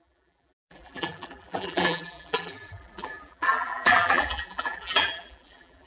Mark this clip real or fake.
fake